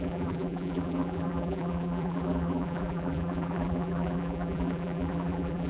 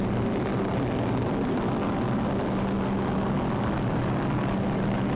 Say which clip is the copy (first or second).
first